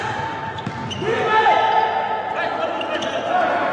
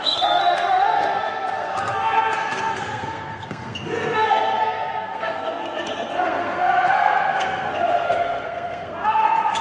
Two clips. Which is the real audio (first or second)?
first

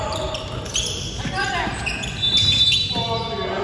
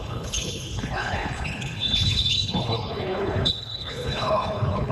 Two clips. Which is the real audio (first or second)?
first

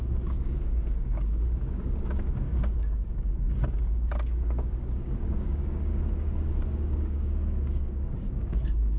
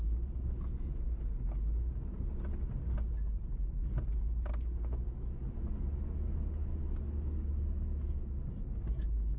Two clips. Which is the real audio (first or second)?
second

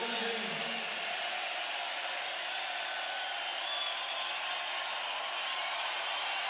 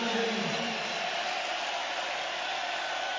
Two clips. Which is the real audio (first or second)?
first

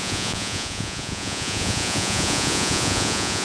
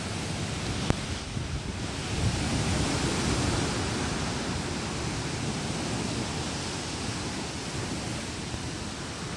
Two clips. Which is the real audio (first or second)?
second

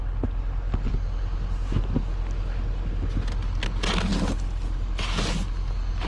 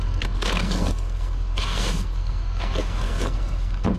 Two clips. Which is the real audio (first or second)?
first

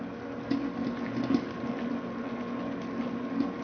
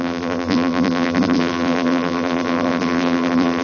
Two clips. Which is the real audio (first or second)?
first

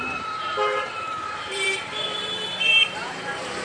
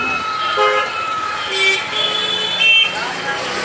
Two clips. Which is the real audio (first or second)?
second